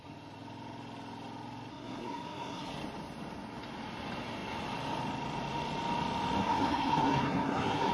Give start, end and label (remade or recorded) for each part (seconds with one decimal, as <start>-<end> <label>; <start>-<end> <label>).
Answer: 0.0-1.7 recorded; 1.7-2.7 remade; 2.7-6.4 recorded; 6.4-7.9 remade